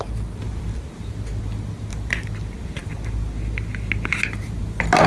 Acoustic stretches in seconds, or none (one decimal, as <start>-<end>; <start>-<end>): 0.0-5.1